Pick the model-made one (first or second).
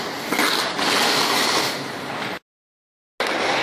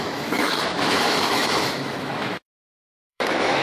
second